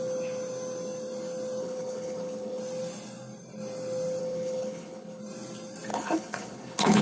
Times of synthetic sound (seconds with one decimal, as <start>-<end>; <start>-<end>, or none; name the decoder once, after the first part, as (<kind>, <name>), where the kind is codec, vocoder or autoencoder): 1.6-2.6 (codec, HILCodec); 4.2-5.2; 5.9-7.0